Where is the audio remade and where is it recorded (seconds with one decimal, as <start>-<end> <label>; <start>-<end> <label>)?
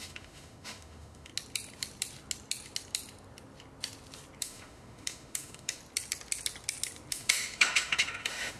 0.0-1.3 remade; 1.3-4.4 recorded; 4.4-5.8 remade; 5.8-7.1 recorded; 7.1-8.6 remade